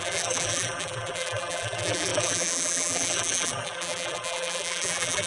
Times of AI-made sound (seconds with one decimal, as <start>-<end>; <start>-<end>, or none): 0.0-5.3